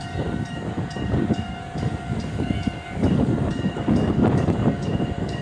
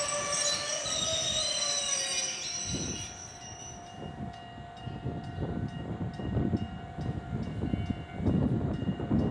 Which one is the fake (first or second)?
first